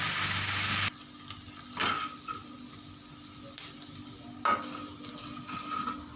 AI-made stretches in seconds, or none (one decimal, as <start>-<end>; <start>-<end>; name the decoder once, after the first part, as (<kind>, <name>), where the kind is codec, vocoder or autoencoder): none